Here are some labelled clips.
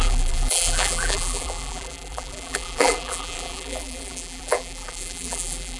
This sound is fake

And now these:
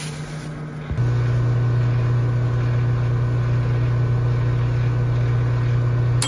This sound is real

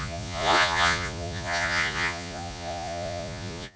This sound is fake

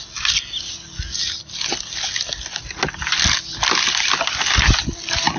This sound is real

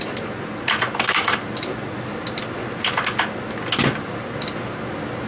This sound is real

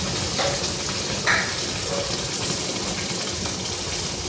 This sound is real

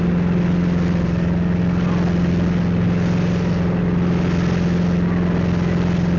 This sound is real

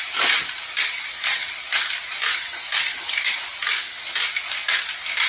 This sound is real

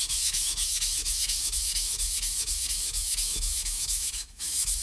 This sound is fake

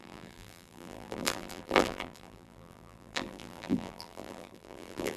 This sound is fake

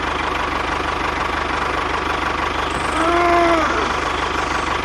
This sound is real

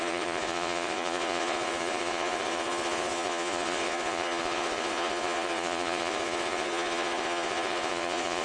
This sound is fake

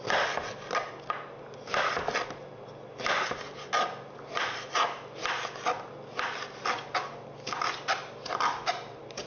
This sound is real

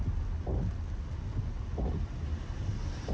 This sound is real